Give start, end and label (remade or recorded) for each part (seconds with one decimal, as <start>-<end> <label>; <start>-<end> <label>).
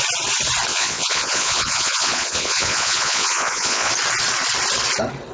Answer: 0.0-0.7 recorded; 0.7-3.9 remade; 3.9-5.3 recorded